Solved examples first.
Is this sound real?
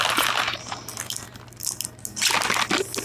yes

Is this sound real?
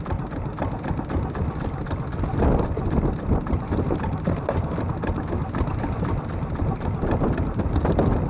yes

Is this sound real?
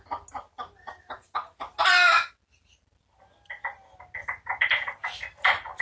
yes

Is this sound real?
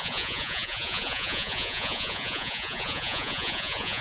no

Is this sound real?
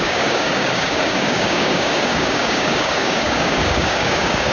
no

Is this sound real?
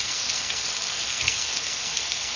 no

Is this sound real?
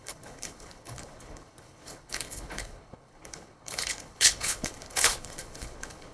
no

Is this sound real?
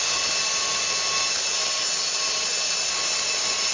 yes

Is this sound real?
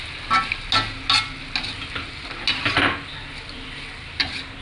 yes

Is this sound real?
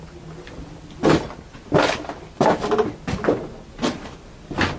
yes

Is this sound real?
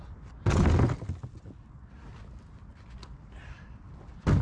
yes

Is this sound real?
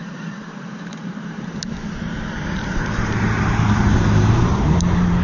no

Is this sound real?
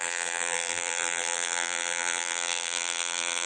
no